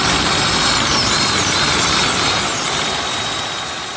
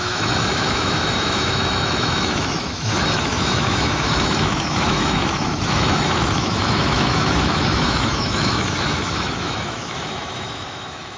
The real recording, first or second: first